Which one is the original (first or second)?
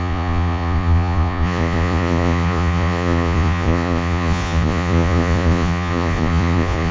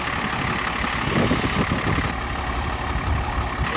second